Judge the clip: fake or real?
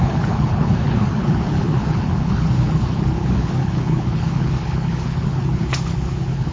fake